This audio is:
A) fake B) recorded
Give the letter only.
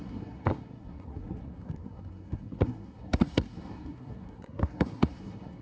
A